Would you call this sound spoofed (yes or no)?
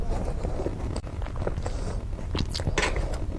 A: no